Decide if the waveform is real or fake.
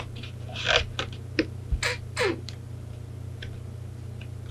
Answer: real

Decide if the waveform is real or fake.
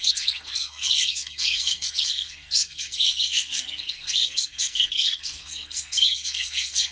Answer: fake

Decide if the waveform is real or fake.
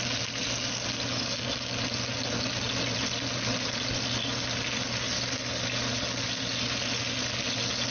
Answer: real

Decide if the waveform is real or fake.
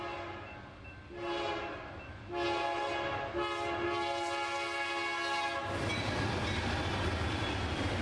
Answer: real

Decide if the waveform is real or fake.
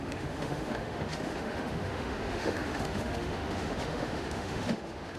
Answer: fake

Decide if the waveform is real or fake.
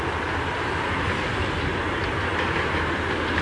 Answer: real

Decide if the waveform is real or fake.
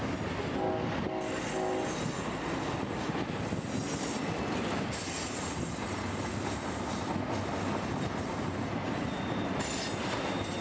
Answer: real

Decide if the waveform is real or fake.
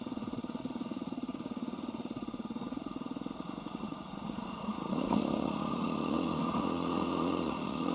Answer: fake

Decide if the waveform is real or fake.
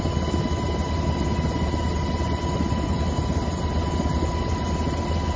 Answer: real